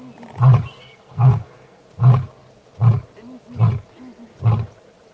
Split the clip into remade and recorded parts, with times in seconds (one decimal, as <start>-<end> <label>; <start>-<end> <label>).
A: 0.0-0.8 recorded; 0.8-1.8 remade; 1.8-5.1 recorded